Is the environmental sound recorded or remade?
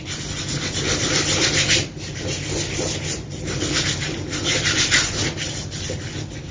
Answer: recorded